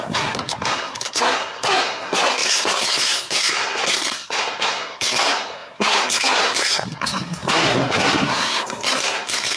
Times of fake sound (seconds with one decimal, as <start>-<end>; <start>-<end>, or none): 0.0-9.6